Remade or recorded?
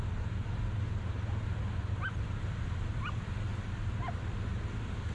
recorded